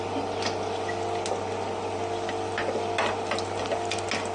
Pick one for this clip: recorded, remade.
recorded